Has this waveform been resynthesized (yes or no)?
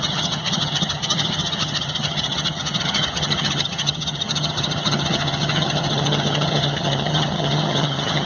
yes